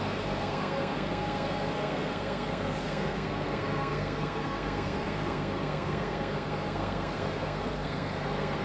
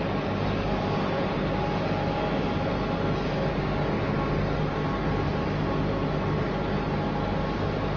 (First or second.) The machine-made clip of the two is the first